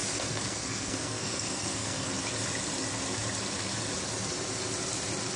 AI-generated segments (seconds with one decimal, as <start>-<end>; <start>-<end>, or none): 0.0-2.1